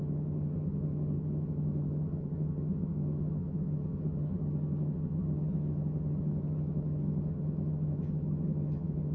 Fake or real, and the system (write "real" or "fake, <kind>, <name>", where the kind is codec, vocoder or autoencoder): fake, vocoder, HiFi-GAN